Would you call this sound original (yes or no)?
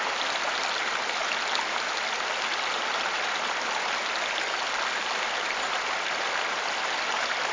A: yes